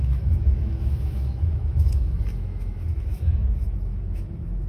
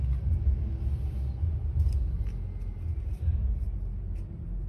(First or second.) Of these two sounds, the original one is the second